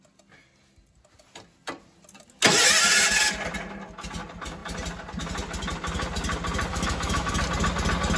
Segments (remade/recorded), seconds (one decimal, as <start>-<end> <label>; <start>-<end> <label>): 0.0-6.7 recorded; 6.7-7.3 remade; 7.3-8.2 recorded